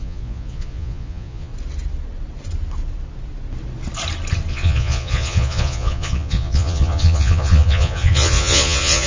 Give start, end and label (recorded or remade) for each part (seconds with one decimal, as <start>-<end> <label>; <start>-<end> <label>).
0.0-1.5 remade; 1.5-4.5 recorded; 4.5-9.1 remade